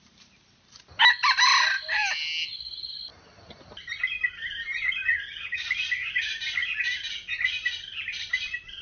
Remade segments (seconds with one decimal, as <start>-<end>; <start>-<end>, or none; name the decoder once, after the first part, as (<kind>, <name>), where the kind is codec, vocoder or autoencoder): none

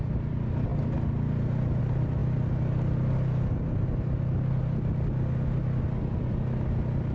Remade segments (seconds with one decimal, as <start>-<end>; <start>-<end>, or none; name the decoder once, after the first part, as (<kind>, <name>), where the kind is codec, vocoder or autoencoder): none